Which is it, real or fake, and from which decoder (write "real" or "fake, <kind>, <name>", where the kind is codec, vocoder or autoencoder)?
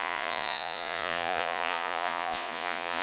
fake, vocoder, Vocos